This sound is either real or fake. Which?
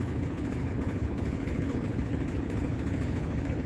fake